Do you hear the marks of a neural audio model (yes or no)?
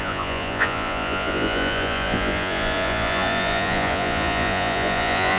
yes